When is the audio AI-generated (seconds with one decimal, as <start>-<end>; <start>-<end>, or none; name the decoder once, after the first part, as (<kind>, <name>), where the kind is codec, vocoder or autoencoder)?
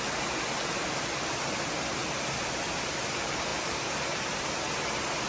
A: none